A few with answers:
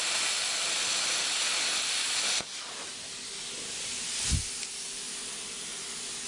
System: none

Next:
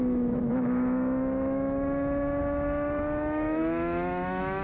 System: autoencoder, DAC-VAE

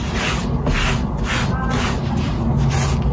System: none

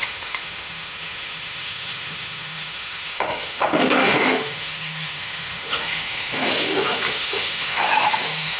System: autoencoder, DAC-VAE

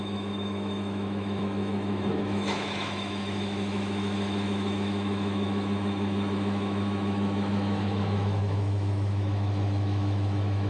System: autoencoder, DAC-VAE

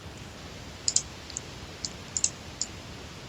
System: none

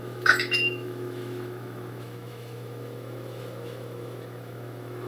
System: autoencoder, DAC-VAE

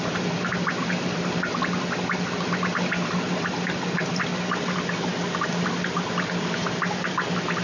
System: none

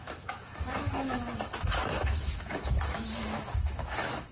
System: autoencoder, DAC-VAE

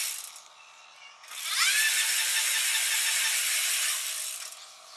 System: none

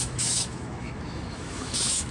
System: autoencoder, DAC-VAE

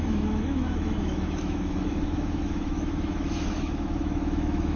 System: autoencoder, DAC-VAE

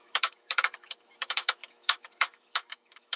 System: autoencoder, DAC-VAE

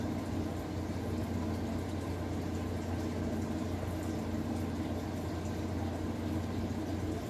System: none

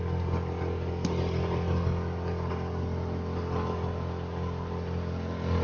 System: none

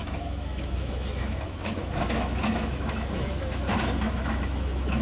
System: autoencoder, DAC-VAE